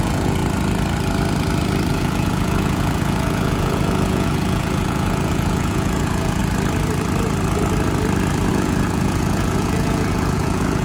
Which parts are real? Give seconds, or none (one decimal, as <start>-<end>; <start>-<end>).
0.4-1.9; 6.4-8.5

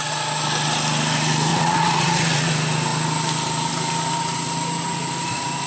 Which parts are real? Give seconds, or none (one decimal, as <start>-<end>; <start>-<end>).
0.0-1.5; 2.5-5.7